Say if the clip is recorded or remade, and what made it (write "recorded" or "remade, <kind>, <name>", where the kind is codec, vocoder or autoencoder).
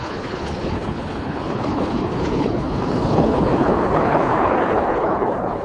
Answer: remade, codec, HILCodec